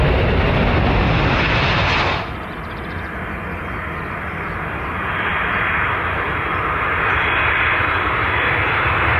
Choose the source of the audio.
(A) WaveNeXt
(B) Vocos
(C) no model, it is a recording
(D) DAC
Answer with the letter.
C